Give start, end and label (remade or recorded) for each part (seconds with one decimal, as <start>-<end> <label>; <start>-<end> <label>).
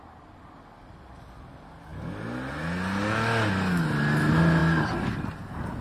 0.0-5.8 recorded